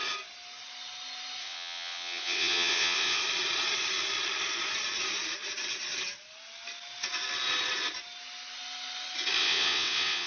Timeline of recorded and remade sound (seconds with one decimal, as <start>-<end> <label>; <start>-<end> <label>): 0.0-1.4 recorded; 1.4-3.2 remade; 3.2-9.4 recorded; 9.4-10.3 remade

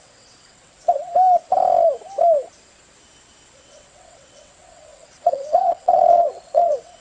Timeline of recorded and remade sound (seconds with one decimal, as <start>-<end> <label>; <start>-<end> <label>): 0.0-1.1 remade; 1.1-3.6 recorded; 3.6-7.0 remade

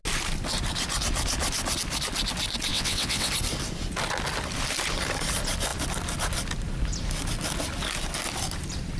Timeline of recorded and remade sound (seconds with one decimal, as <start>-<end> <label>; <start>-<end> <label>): 0.0-2.7 recorded; 2.7-3.3 remade; 3.3-9.0 recorded

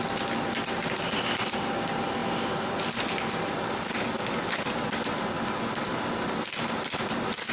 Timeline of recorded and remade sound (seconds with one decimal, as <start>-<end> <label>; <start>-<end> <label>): 0.0-7.5 recorded

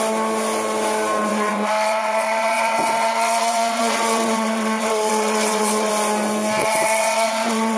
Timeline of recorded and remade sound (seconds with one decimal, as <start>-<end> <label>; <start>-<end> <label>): 0.0-1.3 recorded; 1.3-5.9 remade; 5.9-6.6 recorded; 6.6-7.8 remade

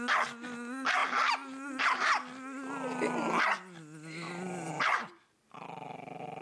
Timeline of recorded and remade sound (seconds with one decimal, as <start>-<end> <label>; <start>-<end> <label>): 0.0-6.4 recorded

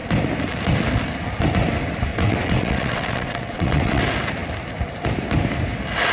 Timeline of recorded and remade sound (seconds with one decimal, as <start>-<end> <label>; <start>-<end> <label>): 0.0-2.1 recorded; 2.1-4.0 remade; 4.0-6.1 recorded